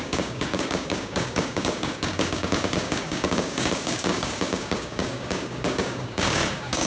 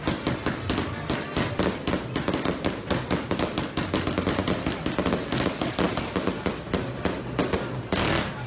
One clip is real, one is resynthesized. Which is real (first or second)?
second